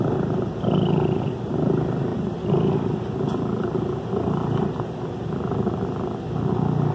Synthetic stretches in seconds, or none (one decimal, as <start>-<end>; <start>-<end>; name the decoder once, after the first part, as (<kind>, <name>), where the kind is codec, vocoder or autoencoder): 2.1-5.6 (vocoder, BigVGAN v2)